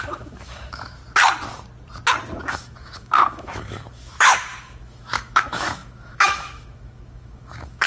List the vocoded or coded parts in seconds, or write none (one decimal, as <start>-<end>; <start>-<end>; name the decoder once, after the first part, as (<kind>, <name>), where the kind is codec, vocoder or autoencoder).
0.0-1.0 (autoencoder, DAC-VAE); 2.4-7.9